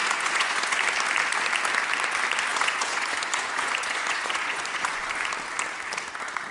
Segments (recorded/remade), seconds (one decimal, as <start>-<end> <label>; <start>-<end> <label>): 0.0-0.8 remade; 0.8-2.5 recorded; 2.5-5.1 remade; 5.1-6.5 recorded

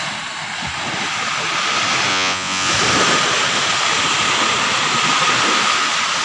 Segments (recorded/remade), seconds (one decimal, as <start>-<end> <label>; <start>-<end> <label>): 0.0-2.1 recorded; 2.1-2.7 remade; 2.7-6.2 recorded

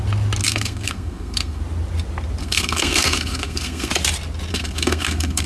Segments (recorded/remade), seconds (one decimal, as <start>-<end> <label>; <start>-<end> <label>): 0.0-0.4 recorded; 0.4-1.6 remade; 1.6-2.4 recorded; 2.4-3.9 remade; 3.9-4.5 recorded; 4.5-5.5 remade

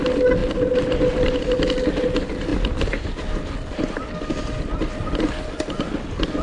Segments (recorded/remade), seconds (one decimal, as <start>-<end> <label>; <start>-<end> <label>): 0.0-6.4 recorded

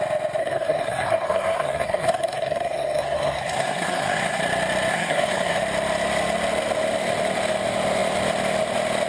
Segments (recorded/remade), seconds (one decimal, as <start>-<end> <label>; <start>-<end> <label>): 0.0-0.4 recorded; 0.4-4.4 remade; 4.4-4.9 recorded; 4.9-5.6 remade; 5.6-9.1 recorded

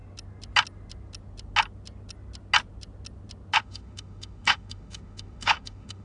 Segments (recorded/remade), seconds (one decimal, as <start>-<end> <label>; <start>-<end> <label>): 0.0-3.6 recorded; 3.6-6.0 remade

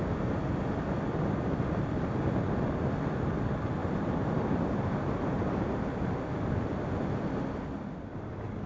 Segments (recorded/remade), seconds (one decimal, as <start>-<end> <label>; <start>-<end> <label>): 0.0-3.8 recorded; 3.8-5.4 remade; 5.4-8.7 recorded